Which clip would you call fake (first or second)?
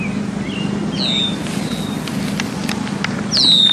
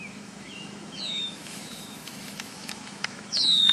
second